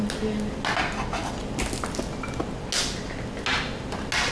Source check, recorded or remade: recorded